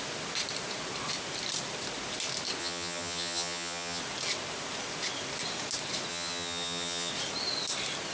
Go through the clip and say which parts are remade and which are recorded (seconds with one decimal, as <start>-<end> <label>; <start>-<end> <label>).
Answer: 0.0-2.6 recorded; 2.6-4.0 remade; 4.0-6.1 recorded; 6.1-7.1 remade; 7.1-8.1 recorded